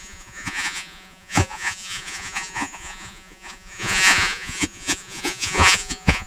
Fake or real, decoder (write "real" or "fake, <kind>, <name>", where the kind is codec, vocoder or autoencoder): fake, vocoder, Vocos